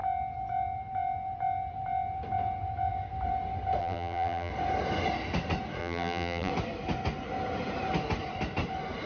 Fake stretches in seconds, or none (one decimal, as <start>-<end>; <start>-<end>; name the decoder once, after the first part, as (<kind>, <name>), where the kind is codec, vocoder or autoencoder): 3.8-4.5 (vocoder, BigVGAN v2); 5.8-6.5